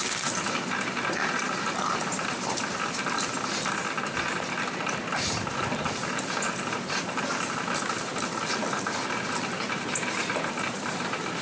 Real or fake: real